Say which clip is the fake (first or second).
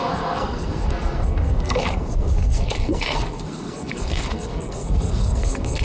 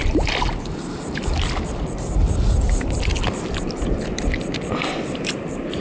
first